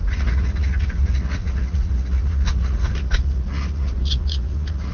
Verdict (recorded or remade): remade